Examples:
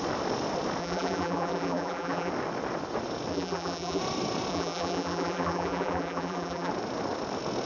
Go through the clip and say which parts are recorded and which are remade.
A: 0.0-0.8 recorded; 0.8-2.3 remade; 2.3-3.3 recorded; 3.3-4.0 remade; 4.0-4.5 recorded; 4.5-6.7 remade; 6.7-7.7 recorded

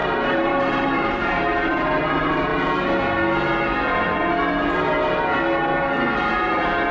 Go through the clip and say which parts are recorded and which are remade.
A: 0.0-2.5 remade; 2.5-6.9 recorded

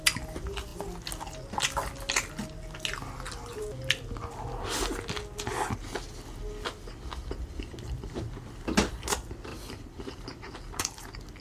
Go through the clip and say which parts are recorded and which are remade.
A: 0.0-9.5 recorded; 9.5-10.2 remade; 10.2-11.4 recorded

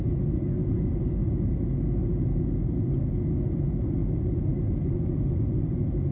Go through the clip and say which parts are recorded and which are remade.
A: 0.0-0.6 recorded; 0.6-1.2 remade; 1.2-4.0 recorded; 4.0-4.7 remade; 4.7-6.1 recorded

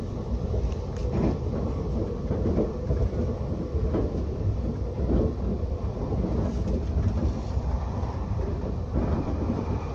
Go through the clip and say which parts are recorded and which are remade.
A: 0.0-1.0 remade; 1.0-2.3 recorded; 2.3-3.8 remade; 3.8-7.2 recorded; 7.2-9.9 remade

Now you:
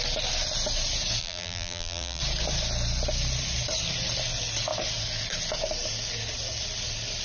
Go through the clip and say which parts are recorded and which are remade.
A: 0.0-1.2 recorded; 1.2-2.2 remade; 2.2-7.2 recorded

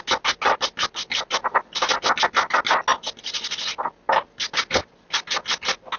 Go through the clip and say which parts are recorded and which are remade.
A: 0.0-6.0 recorded